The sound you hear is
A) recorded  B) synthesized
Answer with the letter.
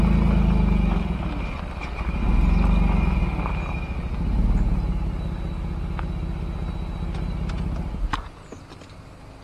A